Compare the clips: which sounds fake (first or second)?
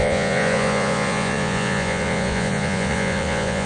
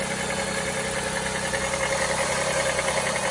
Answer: first